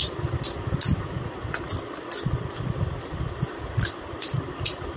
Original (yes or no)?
yes